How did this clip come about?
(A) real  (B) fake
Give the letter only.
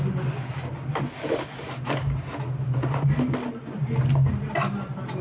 A